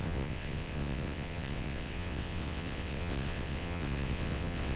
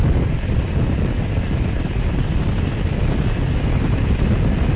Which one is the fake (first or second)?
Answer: first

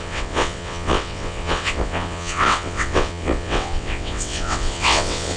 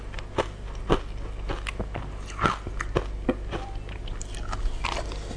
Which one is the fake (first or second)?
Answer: first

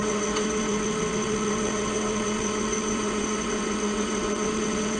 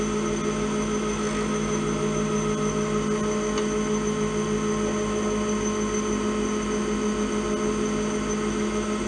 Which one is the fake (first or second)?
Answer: first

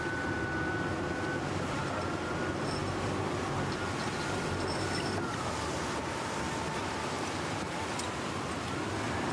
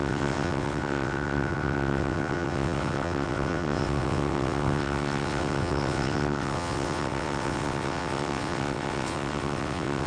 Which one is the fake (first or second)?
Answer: second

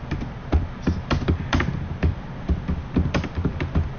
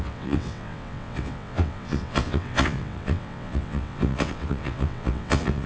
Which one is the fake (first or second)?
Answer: second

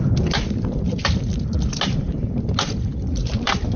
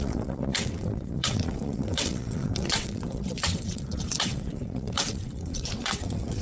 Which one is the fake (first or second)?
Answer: second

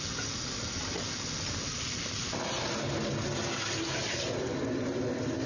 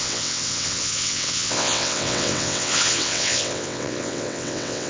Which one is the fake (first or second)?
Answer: second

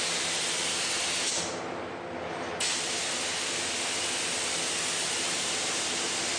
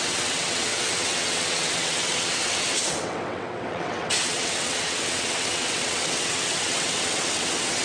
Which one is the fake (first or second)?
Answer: second